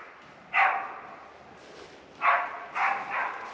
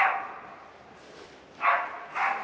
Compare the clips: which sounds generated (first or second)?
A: first